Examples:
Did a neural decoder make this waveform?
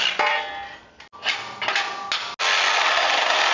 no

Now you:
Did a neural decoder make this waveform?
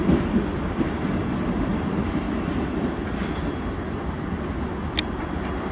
no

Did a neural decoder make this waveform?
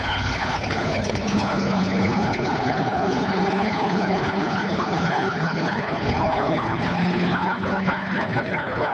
yes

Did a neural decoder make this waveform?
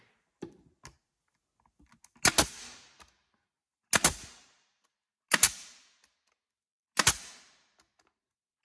no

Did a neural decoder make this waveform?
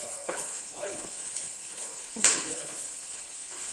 yes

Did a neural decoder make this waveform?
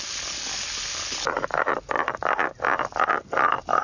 no